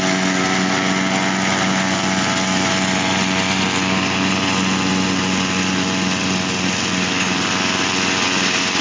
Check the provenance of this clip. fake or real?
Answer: real